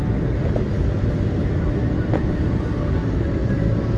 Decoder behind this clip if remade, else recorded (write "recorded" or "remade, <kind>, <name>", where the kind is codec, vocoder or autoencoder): recorded